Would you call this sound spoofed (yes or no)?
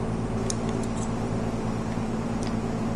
no